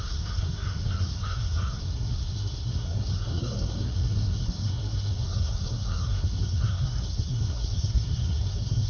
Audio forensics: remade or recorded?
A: remade